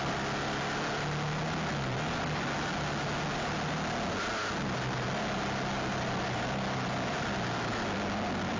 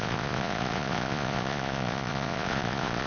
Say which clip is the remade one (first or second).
second